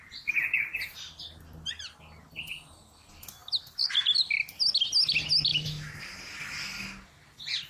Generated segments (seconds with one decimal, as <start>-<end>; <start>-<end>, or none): 5.5-6.0